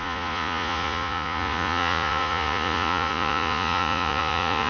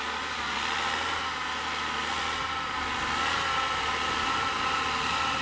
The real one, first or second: second